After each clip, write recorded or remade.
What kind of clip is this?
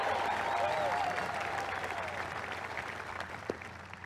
remade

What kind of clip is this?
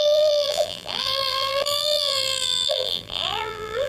remade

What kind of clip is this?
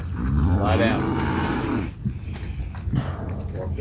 recorded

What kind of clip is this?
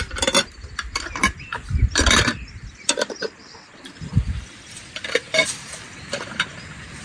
remade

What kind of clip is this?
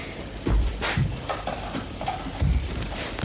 remade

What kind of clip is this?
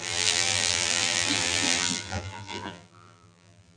remade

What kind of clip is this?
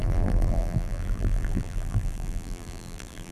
remade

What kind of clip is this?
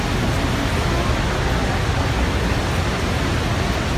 recorded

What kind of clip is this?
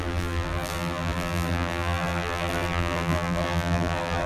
remade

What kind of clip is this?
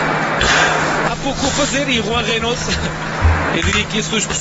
recorded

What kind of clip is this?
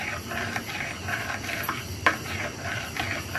recorded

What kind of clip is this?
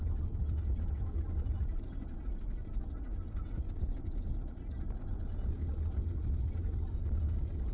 recorded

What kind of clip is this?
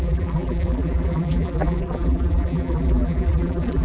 remade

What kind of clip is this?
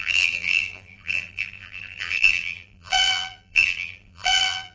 remade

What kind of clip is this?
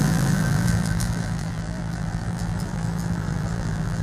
remade